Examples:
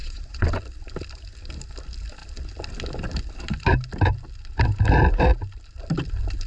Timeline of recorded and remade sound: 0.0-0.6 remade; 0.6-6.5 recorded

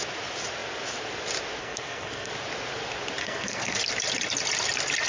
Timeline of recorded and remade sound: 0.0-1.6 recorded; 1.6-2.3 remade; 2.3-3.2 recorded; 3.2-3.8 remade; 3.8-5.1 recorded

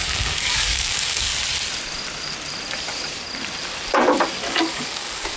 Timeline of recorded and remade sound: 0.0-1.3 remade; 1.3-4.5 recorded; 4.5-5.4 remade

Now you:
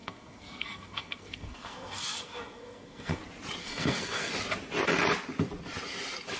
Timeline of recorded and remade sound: 0.0-3.2 remade; 3.2-3.6 recorded; 3.6-4.3 remade; 4.3-6.4 recorded

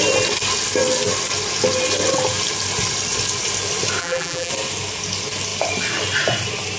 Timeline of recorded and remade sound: 0.0-4.0 recorded; 4.0-4.5 remade; 4.5-6.8 recorded

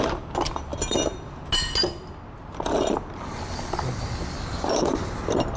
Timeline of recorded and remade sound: 0.0-5.6 recorded

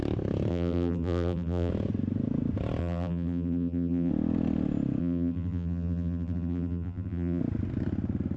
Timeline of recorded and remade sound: 0.0-0.5 recorded; 0.5-1.7 remade; 1.7-2.8 recorded; 2.8-4.1 remade; 4.1-5.0 recorded; 5.0-7.4 remade; 7.4-8.4 recorded